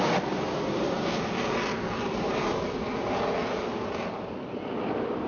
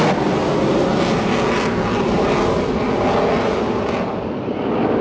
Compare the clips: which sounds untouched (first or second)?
second